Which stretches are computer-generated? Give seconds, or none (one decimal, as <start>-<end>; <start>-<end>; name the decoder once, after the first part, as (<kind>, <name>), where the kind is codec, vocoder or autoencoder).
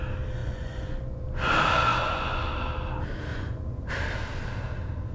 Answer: 0.4-1.2 (vocoder, Vocos); 1.9-2.4; 3.3-3.9